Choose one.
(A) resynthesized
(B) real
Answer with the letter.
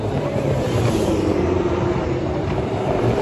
A